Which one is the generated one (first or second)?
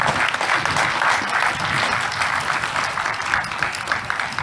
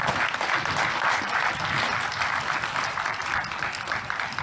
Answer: second